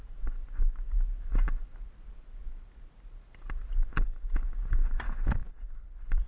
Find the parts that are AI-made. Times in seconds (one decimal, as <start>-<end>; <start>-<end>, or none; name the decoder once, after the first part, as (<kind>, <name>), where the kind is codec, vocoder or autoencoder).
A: 5.4-6.3 (vocoder, BigVGAN v2)